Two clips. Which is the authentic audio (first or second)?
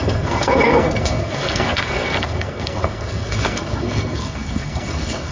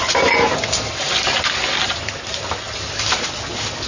second